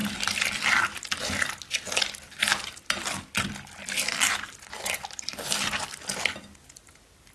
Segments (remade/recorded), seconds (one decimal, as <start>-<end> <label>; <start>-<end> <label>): 0.0-0.6 remade; 0.6-2.4 recorded; 2.4-5.8 remade; 5.8-7.3 recorded